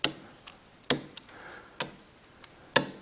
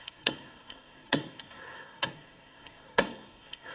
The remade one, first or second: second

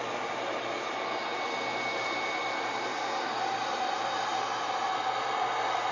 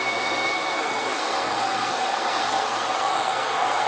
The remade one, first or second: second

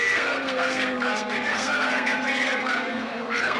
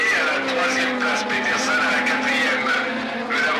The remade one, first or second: first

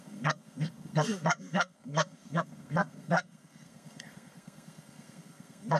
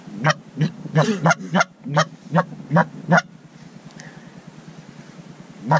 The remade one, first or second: first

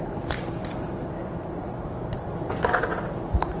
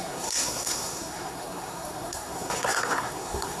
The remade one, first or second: second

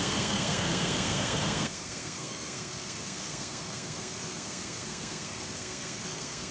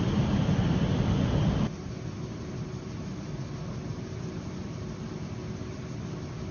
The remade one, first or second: first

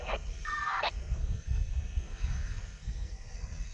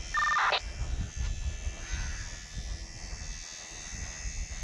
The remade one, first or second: first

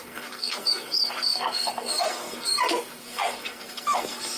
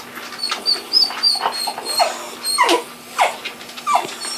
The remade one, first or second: first